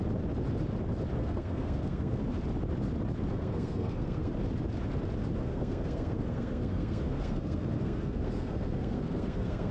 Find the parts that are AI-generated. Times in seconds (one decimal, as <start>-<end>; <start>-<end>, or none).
1.2-2.2; 3.3-4.3; 5.4-9.7